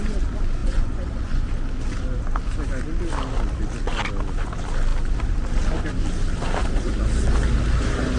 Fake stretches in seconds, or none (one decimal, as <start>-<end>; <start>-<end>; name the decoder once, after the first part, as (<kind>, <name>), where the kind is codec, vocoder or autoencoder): 0.6-1.4 (vocoder, Vocos)